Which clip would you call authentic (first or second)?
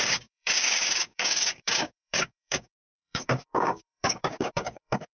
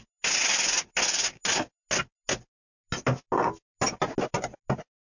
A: second